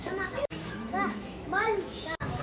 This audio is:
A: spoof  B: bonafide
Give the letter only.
A